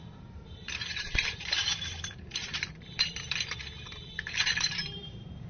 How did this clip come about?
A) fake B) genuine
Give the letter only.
A